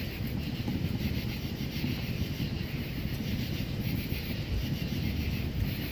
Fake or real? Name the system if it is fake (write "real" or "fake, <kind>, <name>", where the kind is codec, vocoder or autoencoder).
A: real